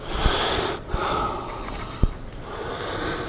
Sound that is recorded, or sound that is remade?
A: remade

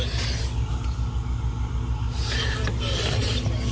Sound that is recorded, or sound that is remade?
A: recorded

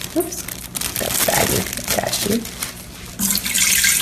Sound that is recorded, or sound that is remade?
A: recorded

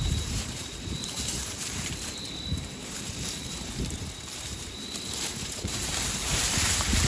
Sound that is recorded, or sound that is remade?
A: remade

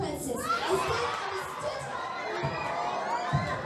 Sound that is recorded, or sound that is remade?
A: recorded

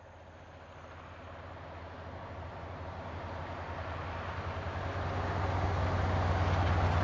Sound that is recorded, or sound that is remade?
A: recorded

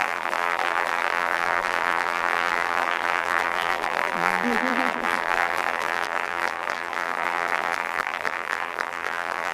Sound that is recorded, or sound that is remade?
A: remade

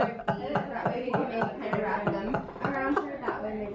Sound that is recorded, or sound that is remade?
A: recorded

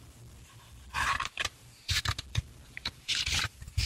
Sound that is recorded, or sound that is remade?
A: remade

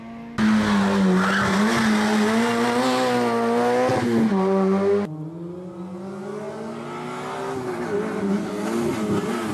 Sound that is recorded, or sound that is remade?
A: recorded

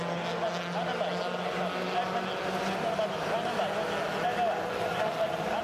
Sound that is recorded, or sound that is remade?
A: recorded